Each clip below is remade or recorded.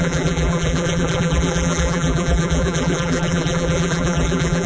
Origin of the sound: remade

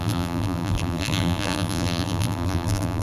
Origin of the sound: remade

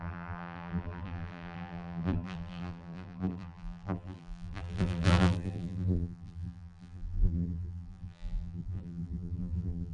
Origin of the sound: remade